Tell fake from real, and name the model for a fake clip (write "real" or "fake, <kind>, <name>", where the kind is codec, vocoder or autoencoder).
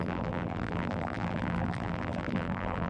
fake, vocoder, BigVGAN v2